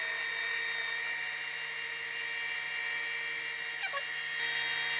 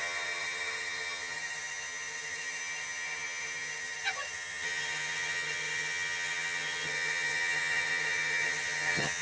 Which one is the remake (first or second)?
second